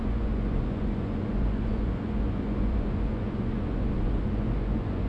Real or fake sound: fake